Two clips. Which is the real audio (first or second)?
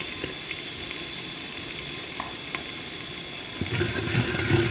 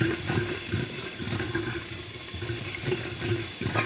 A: first